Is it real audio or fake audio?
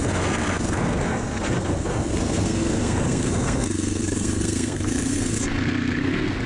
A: fake